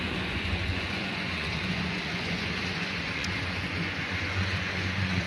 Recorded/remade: remade